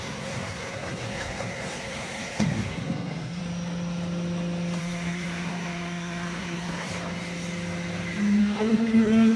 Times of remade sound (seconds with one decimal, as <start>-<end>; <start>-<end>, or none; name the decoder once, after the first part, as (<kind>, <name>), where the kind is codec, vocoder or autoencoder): 0.0-3.4 (codec, SNAC); 4.8-6.9; 8.4-9.4

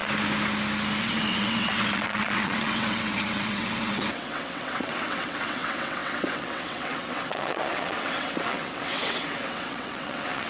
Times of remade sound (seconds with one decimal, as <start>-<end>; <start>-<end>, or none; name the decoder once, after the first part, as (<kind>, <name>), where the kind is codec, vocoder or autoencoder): 1.0-10.5 (vocoder, WaveNeXt)

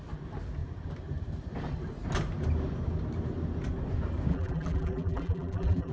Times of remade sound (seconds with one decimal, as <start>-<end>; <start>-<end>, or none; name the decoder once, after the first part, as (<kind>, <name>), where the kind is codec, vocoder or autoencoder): 4.3-5.9 (vocoder, BigVGAN v2)

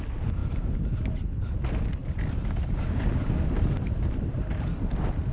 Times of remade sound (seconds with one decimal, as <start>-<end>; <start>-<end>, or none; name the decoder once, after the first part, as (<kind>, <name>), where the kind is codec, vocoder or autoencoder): 0.4-1.4 (vocoder, BigVGAN v2); 2.0-5.3